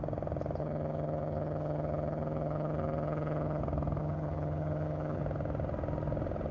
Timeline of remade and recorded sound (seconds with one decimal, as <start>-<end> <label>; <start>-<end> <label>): 0.0-0.6 recorded; 0.6-3.6 remade; 3.6-4.0 recorded; 4.0-5.2 remade; 5.2-6.5 recorded